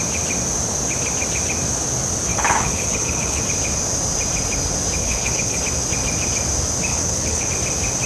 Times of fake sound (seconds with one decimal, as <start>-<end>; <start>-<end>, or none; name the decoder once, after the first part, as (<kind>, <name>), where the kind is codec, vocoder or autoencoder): 2.3-3.4 (codec, HILCodec); 5.0-5.6; 6.9-7.5